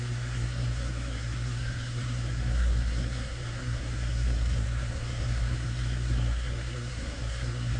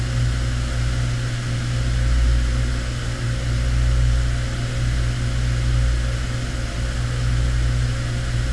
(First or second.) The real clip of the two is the second